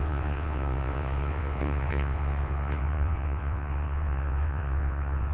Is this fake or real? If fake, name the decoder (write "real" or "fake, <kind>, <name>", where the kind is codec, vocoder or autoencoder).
fake, vocoder, WaveNeXt